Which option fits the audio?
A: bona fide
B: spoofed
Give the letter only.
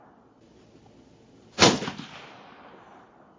A